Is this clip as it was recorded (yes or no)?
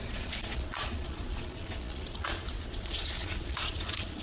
no